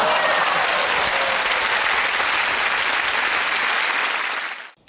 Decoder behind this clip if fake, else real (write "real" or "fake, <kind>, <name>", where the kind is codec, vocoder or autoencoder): real